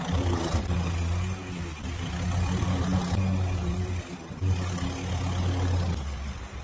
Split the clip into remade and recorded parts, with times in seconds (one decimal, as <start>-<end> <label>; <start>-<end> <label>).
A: 0.0-6.6 recorded